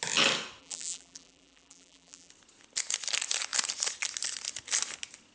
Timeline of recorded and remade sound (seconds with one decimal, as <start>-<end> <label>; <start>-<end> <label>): 0.0-0.6 recorded; 0.6-2.3 remade; 2.3-5.3 recorded